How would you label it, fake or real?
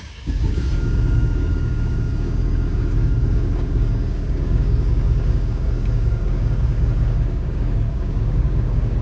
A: fake